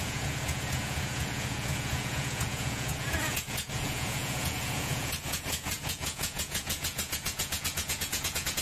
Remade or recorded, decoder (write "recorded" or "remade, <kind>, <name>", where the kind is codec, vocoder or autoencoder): remade, vocoder, Vocos